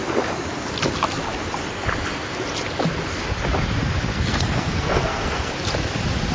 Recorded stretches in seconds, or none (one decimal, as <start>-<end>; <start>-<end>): 0.0-4.1; 5.5-6.3